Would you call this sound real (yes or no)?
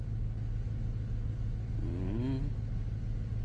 yes